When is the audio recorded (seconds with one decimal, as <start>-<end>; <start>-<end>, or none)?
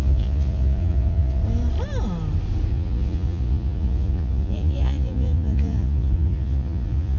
1.4-2.7